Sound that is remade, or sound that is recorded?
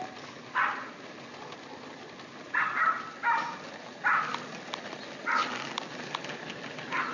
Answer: recorded